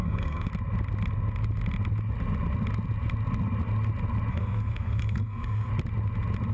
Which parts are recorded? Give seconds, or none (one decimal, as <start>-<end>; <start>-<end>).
0.5-4.3; 5.7-6.5